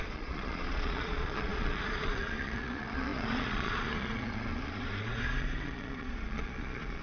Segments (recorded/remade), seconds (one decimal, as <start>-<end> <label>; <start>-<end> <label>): 0.0-7.0 remade